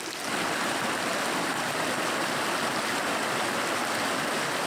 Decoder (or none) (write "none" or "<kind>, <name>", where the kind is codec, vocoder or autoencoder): none